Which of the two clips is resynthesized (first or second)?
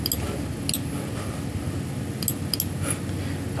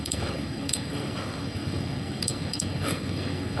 second